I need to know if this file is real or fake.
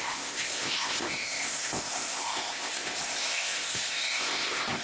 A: fake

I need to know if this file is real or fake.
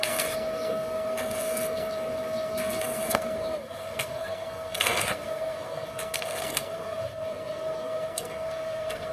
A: fake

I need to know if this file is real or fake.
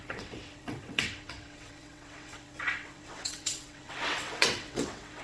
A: fake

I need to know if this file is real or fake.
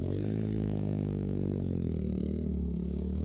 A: fake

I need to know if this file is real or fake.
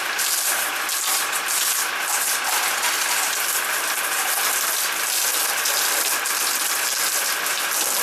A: real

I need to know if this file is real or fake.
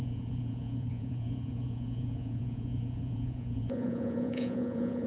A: fake